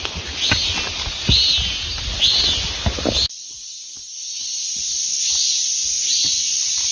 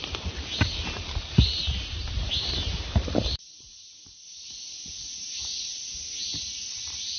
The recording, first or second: first